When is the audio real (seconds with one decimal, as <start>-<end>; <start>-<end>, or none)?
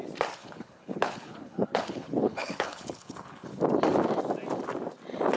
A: 0.0-0.4; 3.6-5.4